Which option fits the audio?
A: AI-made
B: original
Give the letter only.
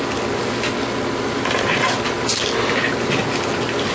B